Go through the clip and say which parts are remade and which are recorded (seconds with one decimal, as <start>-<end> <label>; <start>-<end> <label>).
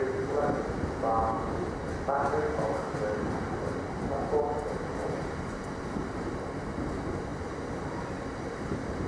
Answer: 0.0-9.1 recorded